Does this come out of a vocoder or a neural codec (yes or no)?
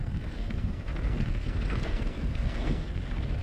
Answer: yes